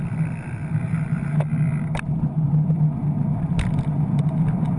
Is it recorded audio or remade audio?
recorded